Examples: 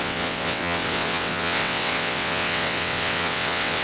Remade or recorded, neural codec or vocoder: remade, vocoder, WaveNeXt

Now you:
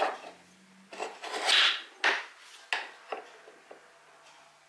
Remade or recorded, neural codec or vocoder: recorded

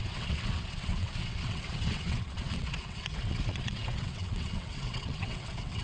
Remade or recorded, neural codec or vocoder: remade, vocoder, WaveNeXt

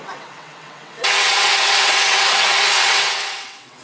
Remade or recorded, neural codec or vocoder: remade, vocoder, WaveNeXt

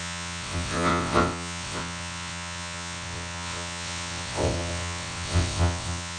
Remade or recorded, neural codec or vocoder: remade, vocoder, WaveNeXt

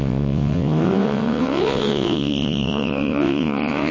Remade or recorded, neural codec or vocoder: remade, vocoder, WaveNeXt